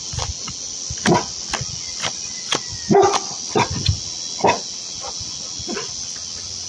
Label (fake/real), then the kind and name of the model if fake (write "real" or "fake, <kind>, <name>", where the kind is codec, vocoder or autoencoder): real